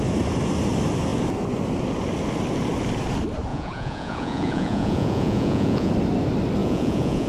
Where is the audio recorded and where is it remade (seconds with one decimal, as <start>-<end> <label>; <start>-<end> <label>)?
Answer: 0.0-3.5 recorded; 3.5-5.9 remade; 5.9-6.6 recorded; 6.6-7.3 remade